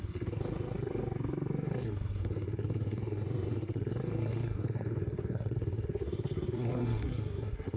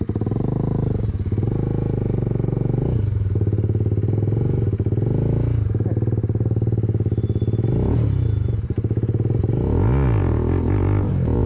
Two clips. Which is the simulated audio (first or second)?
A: first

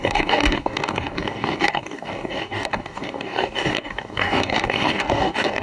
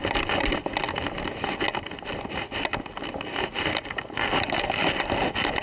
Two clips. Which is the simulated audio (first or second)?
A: first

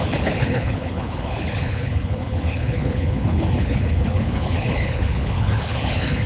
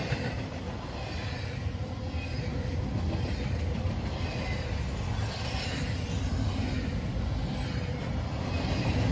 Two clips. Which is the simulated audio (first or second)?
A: first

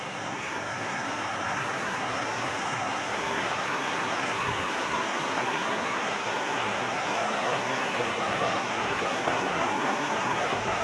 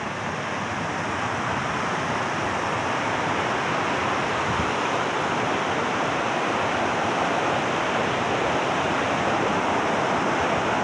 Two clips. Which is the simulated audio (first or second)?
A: first